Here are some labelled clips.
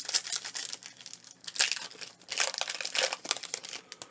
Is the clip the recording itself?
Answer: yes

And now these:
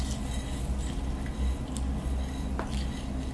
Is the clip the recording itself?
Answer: yes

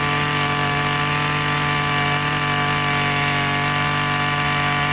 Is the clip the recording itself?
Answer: yes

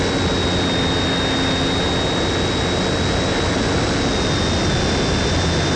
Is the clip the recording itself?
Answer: yes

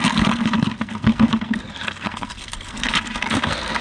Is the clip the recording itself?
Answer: no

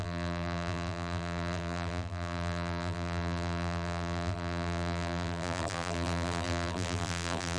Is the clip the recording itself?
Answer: no